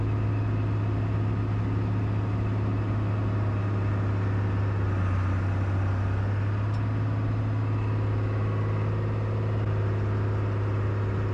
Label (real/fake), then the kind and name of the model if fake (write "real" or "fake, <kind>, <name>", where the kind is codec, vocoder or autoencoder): real